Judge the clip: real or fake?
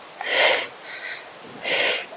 real